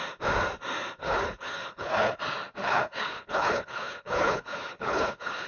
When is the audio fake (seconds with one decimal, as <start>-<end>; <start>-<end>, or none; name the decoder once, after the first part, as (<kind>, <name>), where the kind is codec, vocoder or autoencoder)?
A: 1.0-2.2 (codec, HILCodec); 2.6-5.5